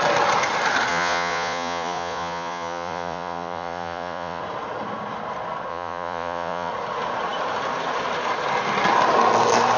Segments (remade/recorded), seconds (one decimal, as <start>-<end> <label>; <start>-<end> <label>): 0.0-0.9 recorded; 0.9-4.4 remade; 4.4-5.7 recorded; 5.7-6.7 remade; 6.7-9.8 recorded